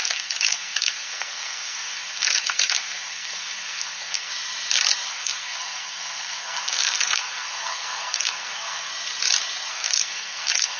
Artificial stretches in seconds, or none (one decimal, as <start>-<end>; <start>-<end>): 0.0-4.3; 5.1-8.9; 9.7-10.8